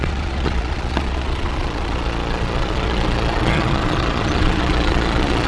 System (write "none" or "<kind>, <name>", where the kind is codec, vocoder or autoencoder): vocoder, Vocos